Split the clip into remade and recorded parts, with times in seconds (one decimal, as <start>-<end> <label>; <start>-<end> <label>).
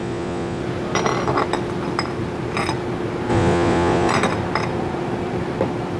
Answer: 0.0-0.6 remade; 0.6-3.3 recorded; 3.3-4.1 remade; 4.1-6.0 recorded